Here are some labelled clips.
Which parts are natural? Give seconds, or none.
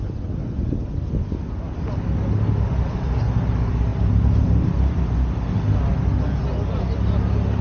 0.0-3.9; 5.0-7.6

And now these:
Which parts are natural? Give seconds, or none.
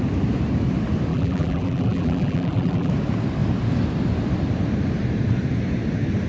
0.0-1.1; 2.9-6.3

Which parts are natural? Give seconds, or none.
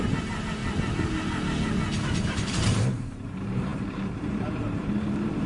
0.6-2.0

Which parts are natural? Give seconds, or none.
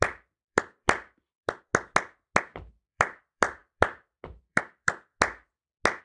1.7-2.4; 5.1-6.0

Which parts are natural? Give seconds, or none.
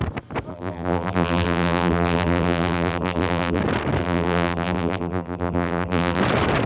0.0-0.5; 3.6-4.0; 6.2-6.7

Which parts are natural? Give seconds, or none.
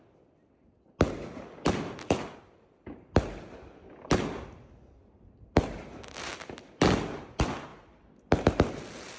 0.0-5.0; 6.3-9.2